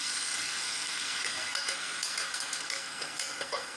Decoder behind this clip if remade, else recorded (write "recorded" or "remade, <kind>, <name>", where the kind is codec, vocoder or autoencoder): remade, codec, SNAC